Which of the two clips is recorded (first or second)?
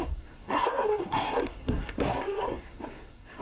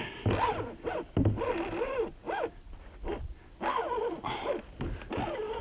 second